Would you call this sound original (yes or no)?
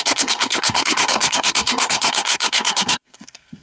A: no